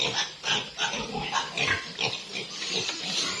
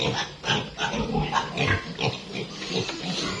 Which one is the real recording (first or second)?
second